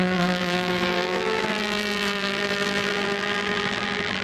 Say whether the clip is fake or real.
fake